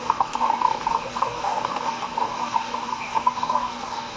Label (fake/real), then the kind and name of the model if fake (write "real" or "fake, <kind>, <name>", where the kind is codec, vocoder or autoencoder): fake, codec, DAC